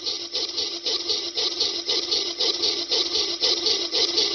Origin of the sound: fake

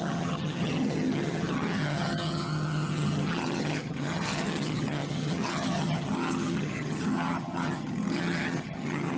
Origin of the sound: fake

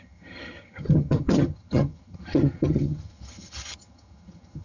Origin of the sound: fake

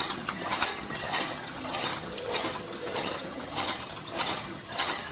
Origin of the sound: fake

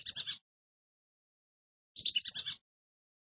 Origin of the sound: real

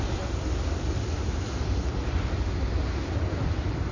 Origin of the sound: real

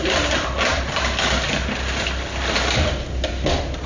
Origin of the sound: real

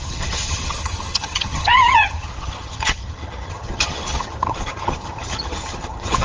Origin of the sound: fake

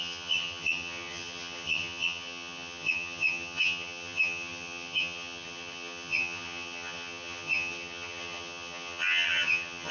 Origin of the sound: fake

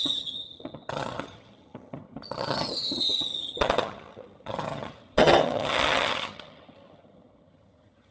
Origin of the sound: fake